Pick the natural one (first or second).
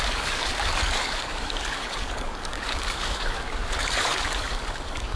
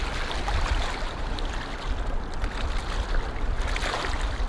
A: second